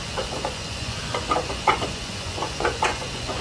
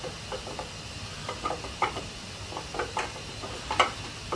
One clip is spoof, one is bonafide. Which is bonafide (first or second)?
second